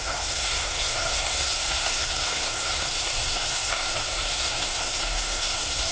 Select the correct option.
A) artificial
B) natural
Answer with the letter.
A